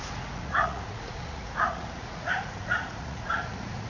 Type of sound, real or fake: fake